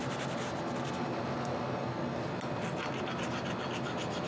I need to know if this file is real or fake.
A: real